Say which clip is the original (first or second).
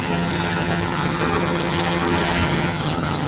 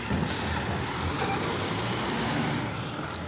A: second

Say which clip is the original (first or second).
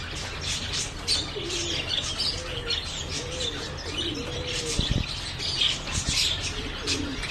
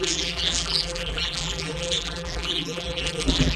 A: first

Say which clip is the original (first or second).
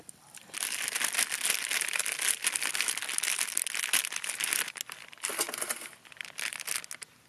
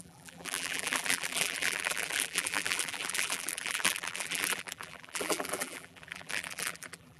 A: first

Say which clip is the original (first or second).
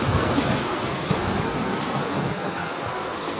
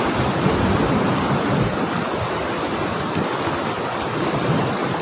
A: second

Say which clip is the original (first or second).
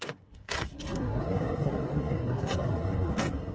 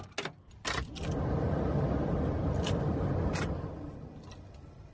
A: second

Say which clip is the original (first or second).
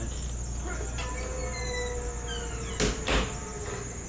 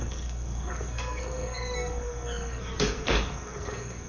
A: first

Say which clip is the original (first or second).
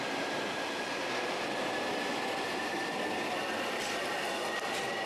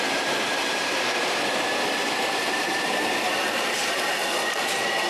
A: first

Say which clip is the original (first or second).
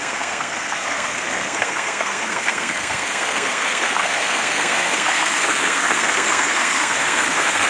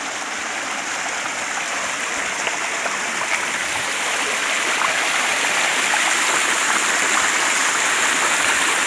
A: second